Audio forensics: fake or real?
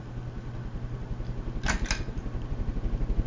real